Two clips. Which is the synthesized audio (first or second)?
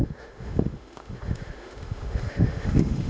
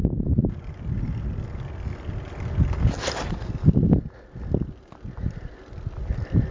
first